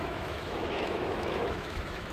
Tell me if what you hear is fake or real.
fake